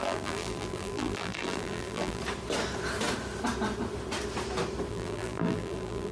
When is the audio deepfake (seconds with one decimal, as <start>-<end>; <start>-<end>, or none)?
0.0-2.2; 4.9-6.1